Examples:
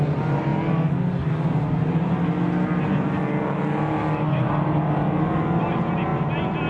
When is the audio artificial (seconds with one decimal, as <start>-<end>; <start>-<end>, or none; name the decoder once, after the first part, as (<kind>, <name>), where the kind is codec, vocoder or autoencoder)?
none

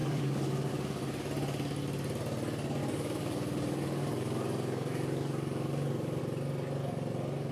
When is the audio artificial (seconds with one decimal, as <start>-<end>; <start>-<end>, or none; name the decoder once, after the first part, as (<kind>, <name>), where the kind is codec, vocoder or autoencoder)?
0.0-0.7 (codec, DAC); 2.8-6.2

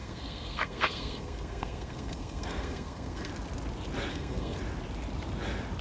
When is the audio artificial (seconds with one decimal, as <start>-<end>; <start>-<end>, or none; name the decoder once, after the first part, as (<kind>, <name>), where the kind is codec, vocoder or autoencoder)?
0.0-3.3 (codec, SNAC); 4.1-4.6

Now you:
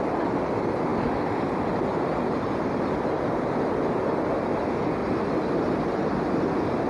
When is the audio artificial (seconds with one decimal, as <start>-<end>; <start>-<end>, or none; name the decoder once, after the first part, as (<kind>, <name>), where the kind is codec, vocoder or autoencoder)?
none

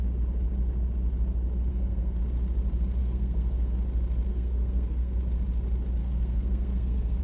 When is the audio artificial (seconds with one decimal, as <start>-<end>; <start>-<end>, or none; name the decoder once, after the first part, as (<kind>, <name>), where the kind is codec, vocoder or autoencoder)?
1.7-2.2 (codec, SNAC); 3.0-3.7; 4.3-5.2; 6.0-7.2